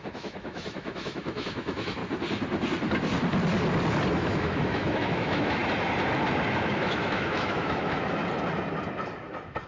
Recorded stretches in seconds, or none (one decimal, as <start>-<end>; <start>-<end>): 2.0-4.1; 5.6-6.5; 8.2-9.7